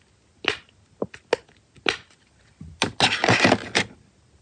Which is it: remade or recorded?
recorded